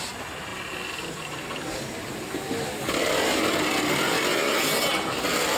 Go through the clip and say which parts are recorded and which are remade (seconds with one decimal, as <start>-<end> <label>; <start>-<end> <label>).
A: 0.0-5.6 recorded